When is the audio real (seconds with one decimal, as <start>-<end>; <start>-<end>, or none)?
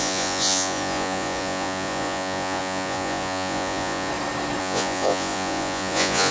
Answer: 4.1-4.6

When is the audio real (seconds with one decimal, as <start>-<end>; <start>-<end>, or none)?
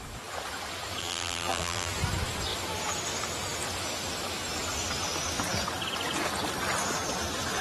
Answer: 0.0-1.0; 1.9-7.6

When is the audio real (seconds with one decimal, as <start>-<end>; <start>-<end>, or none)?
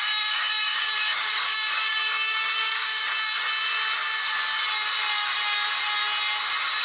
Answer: 3.0-6.8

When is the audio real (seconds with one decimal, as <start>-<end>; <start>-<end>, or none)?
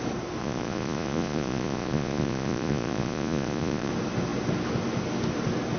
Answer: 0.0-0.4; 3.9-5.8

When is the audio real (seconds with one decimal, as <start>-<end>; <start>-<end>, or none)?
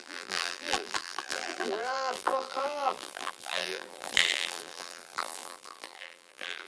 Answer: none